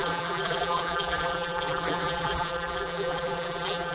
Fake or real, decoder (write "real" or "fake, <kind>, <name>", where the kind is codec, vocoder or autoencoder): fake, vocoder, BigVGAN v2